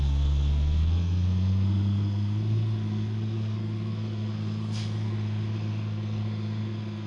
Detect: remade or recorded remade